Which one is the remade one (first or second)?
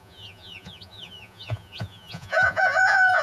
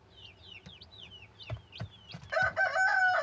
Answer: first